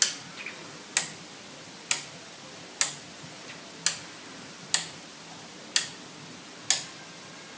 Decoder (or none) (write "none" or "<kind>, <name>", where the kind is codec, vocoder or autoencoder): none